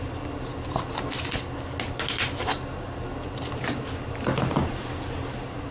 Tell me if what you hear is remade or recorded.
recorded